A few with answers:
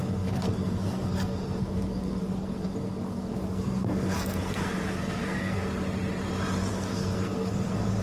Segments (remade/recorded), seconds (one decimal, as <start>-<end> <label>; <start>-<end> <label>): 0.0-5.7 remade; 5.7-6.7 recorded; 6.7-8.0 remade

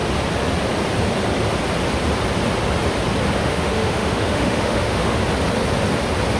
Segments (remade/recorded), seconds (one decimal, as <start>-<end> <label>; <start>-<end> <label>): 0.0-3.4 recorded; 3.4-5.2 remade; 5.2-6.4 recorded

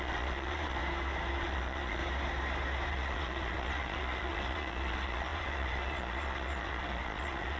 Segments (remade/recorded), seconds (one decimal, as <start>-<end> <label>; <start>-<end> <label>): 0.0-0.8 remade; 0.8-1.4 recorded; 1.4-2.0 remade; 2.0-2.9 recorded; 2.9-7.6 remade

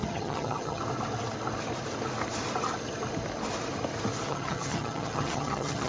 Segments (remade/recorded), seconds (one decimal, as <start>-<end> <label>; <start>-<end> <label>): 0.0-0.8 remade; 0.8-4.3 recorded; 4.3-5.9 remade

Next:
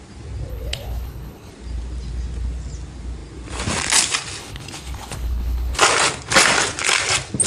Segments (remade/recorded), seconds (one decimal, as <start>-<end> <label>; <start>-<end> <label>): 0.0-0.5 recorded; 0.5-1.5 remade; 1.5-4.4 recorded; 4.4-5.8 remade; 5.8-7.5 recorded